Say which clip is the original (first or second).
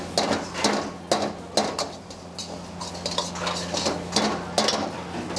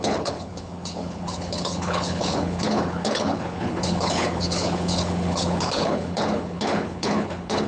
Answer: first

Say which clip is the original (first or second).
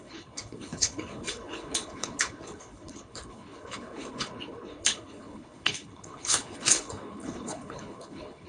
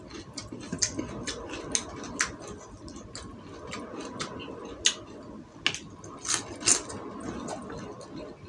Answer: second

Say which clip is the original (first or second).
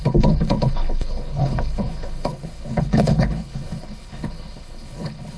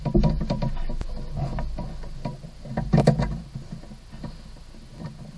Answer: second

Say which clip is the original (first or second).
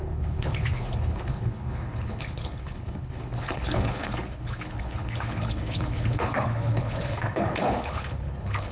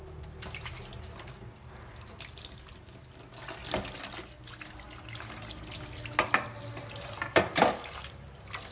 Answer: second